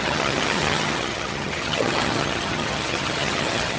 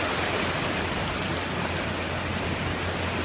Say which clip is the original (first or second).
second